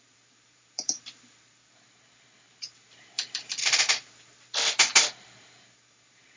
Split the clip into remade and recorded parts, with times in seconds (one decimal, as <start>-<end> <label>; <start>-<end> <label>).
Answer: 0.0-4.9 remade; 4.9-5.4 recorded; 5.4-6.4 remade